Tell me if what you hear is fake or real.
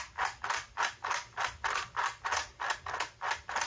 real